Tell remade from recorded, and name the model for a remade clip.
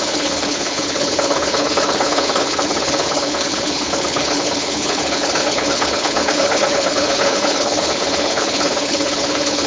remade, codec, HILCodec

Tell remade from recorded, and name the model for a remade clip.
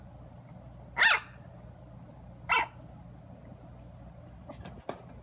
recorded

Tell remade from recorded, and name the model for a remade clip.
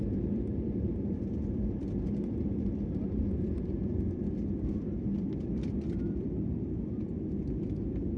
remade, vocoder, BigVGAN v2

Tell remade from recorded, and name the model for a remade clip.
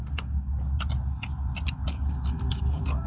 recorded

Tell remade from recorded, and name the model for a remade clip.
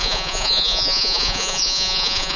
remade, vocoder, Vocos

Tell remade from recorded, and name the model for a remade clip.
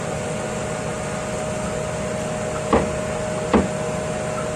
recorded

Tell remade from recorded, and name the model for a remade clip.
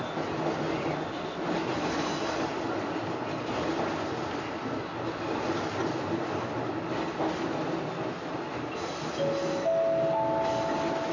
recorded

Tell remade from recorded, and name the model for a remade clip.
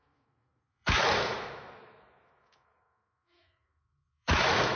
remade, autoencoder, DAC-VAE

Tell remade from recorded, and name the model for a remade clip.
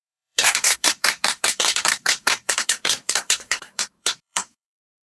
remade, codec, SNAC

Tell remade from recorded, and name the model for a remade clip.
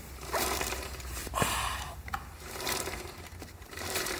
remade, vocoder, BigVGAN v2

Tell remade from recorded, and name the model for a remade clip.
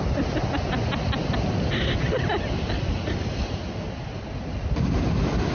recorded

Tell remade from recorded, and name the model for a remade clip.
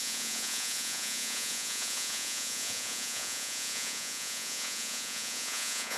remade, vocoder, Vocos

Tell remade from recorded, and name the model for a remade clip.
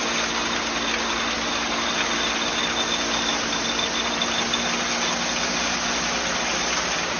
recorded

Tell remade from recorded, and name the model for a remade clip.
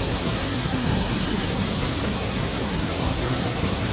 remade, codec, SNAC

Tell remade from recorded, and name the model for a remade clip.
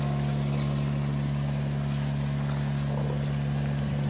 recorded